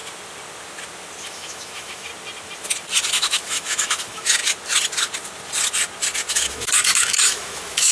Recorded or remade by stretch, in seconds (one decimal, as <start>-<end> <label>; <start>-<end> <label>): 0.0-1.2 recorded; 1.2-2.1 remade; 2.1-3.1 recorded; 3.1-4.4 remade; 4.4-6.3 recorded; 6.3-7.9 remade